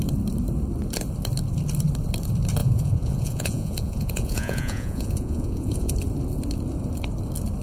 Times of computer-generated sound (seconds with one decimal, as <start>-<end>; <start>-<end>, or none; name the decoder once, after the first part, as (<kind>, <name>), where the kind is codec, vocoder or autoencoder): 2.6-5.9 (vocoder, Vocos)